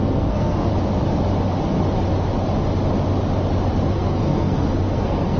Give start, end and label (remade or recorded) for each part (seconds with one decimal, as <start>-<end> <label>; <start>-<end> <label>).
0.0-0.7 remade; 0.7-3.9 recorded; 3.9-5.4 remade